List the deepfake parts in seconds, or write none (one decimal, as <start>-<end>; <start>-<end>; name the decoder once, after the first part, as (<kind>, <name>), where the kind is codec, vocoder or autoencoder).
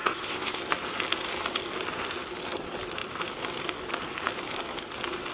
0.0-0.6 (codec, ZipCodec)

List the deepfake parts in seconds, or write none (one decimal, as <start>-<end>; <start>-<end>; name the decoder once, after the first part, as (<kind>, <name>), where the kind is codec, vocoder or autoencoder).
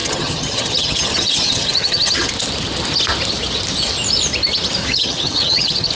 0.0-2.3 (vocoder, HiFi-GAN); 4.8-5.9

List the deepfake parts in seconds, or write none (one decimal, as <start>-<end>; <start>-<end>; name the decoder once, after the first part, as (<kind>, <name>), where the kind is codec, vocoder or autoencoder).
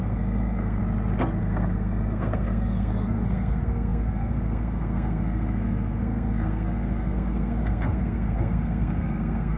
0.0-0.8 (codec, SNAC); 1.4-9.6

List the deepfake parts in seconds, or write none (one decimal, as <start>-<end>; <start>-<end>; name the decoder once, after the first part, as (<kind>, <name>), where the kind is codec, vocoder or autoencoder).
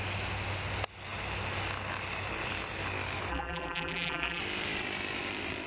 3.3-4.4 (vocoder, BigVGAN v2)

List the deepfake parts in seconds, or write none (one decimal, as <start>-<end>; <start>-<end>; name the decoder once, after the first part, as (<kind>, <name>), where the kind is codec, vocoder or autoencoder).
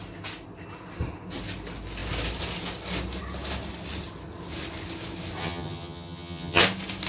5.4-6.6 (vocoder, HiFi-GAN)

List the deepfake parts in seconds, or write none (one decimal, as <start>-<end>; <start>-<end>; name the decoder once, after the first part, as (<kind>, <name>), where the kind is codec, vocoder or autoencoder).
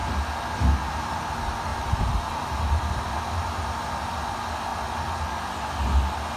1.7-3.0 (vocoder, BigVGAN v2)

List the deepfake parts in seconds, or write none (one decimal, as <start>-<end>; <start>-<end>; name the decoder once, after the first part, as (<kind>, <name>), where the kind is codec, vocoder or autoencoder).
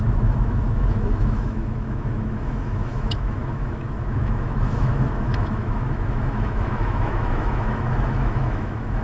0.0-9.0 (autoencoder, DAC-VAE)